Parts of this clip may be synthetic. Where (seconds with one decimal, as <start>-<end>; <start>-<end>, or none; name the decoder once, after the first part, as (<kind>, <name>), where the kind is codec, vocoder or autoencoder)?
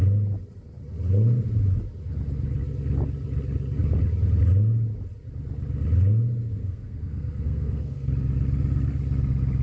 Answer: 6.6-8.1 (codec, SNAC)